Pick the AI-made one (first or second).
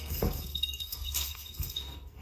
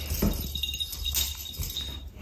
first